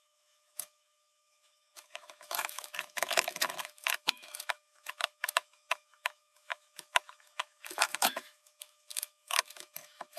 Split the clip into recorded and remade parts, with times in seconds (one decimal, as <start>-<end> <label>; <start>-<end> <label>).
0.0-10.2 remade